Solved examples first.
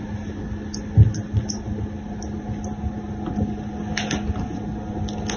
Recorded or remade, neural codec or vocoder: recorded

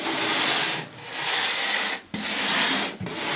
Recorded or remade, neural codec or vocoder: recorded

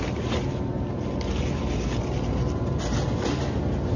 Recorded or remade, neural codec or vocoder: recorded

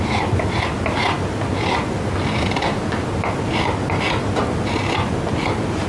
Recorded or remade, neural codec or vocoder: recorded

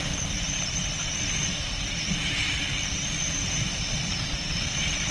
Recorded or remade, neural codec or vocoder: remade, vocoder, BigVGAN v2